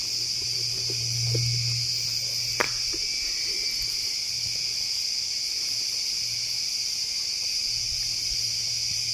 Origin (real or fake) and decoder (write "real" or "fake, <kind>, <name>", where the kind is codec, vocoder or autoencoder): fake, vocoder, BigVGAN v2